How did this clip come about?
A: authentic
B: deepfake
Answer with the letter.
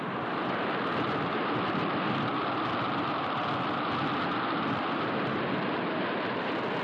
A